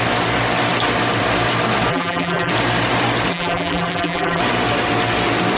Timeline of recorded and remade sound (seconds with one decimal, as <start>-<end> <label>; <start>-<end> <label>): 0.0-1.9 recorded; 1.9-2.5 remade; 2.5-3.3 recorded; 3.3-4.4 remade; 4.4-5.6 recorded